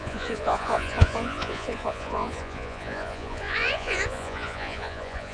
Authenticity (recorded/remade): remade